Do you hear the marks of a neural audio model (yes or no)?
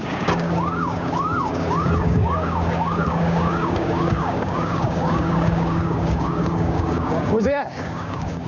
yes